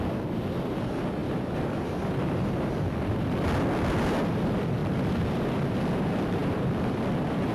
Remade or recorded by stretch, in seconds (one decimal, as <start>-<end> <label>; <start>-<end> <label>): 0.0-7.5 remade